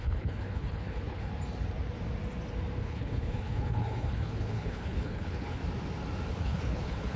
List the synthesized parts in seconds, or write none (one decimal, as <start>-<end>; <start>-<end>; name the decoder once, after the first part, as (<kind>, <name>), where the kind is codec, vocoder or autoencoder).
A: 0.0-1.3 (codec, HILCodec); 2.8-5.6; 6.3-7.2